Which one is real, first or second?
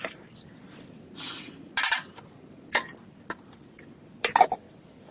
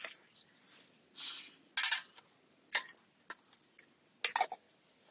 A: second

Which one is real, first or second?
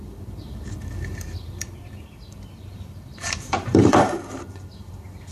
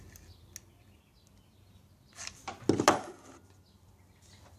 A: second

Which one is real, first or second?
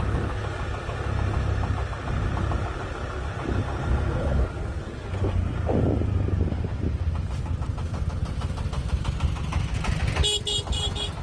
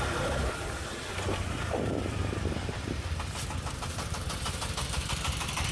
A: first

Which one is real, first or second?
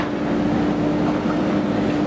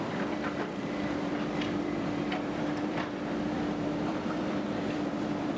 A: first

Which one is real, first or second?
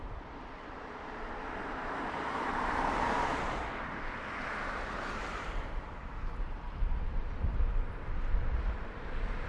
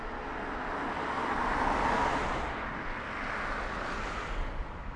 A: second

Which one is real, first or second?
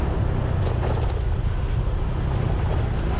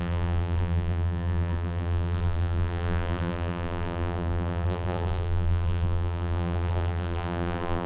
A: first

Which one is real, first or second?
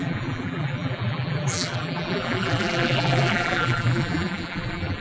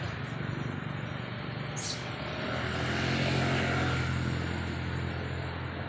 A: second